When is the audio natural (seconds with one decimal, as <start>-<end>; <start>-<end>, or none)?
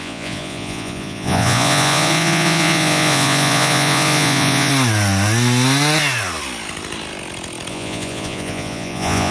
4.7-7.7